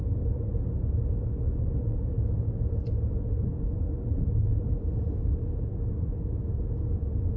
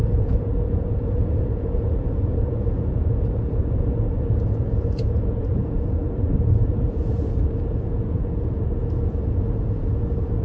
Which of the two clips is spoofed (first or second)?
second